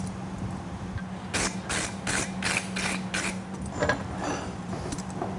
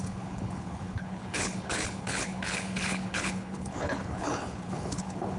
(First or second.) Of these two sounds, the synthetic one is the second